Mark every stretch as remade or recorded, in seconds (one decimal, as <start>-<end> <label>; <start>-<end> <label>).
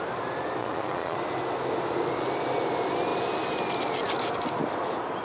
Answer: 0.0-0.6 recorded; 0.6-1.2 remade; 1.2-5.2 recorded